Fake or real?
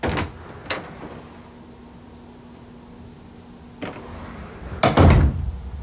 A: real